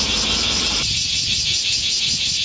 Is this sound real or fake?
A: real